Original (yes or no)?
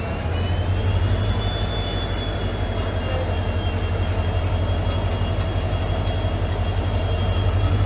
yes